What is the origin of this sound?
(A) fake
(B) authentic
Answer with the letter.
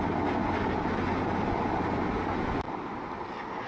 B